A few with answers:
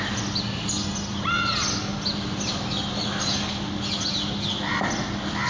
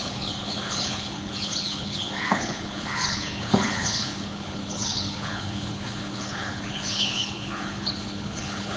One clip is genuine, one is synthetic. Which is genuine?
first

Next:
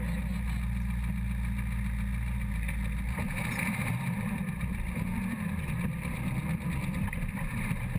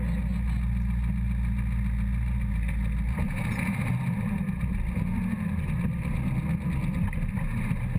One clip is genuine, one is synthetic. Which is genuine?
second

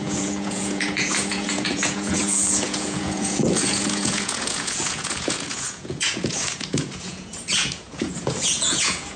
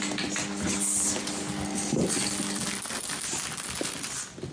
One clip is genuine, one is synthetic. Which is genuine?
second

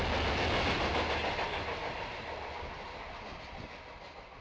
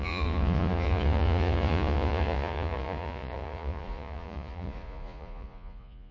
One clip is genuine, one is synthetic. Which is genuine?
first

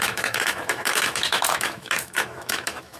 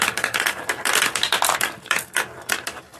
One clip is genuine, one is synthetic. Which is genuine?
second